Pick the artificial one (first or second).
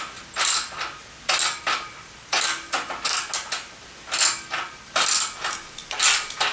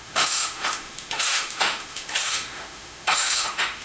second